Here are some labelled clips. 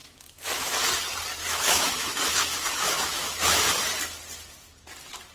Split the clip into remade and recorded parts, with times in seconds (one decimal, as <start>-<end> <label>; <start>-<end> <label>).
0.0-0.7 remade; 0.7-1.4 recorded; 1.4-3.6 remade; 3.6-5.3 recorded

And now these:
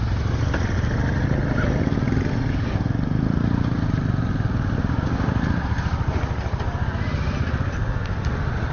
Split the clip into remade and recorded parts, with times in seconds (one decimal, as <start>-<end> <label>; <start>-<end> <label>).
0.0-8.7 recorded

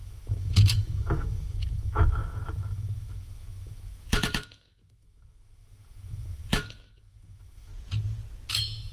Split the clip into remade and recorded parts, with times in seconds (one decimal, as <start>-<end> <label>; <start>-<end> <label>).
0.0-7.7 remade; 7.7-8.5 recorded; 8.5-8.9 remade